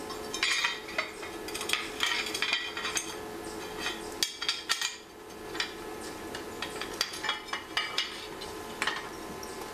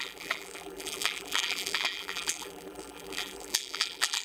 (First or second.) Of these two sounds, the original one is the first